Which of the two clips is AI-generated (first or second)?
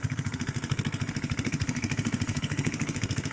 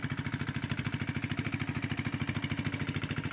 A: first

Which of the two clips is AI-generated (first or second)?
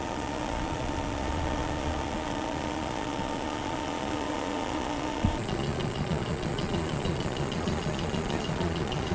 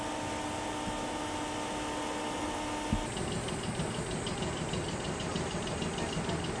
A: first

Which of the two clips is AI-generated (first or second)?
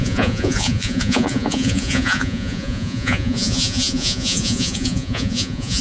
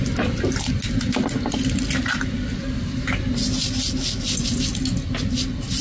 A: first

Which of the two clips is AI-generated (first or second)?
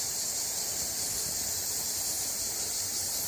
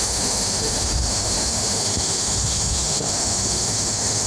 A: second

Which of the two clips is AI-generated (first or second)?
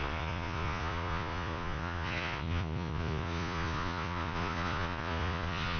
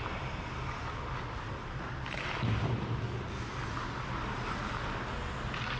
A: first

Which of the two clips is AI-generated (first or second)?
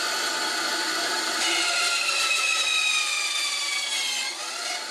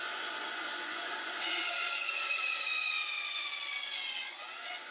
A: second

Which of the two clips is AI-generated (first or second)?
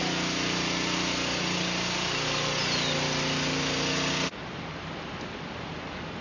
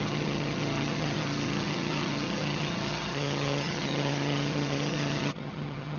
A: second